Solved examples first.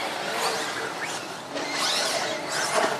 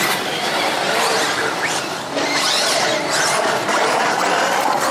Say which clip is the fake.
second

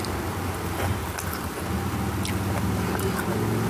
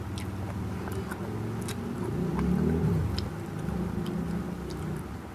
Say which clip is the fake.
first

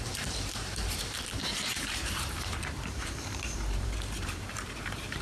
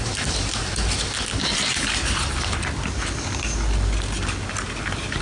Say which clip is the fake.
first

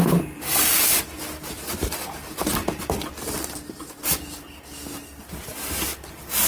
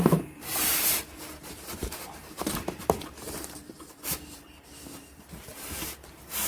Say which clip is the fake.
second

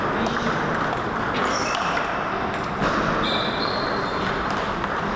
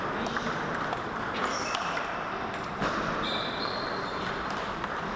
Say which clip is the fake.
second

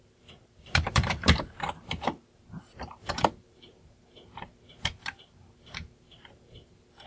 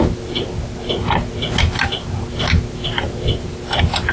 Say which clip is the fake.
first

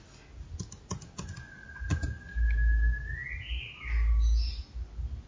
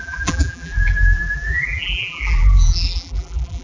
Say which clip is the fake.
second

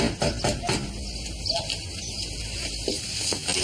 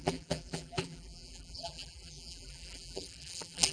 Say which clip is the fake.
second